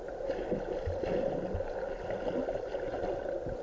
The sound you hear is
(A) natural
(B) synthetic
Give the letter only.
A